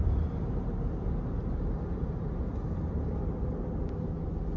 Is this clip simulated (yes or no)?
no